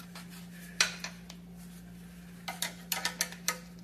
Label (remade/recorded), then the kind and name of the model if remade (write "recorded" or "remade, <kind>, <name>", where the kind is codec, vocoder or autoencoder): recorded